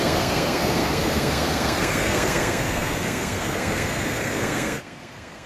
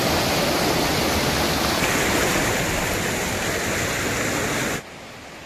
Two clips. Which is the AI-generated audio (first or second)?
first